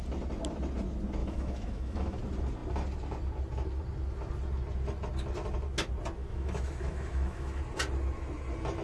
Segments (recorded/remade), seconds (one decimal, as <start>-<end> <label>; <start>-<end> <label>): 0.0-1.2 recorded; 1.2-2.2 remade; 2.2-6.2 recorded; 6.2-7.6 remade; 7.6-8.8 recorded